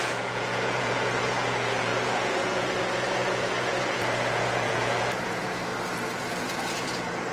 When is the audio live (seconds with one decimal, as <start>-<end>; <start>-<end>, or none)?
5.7-6.4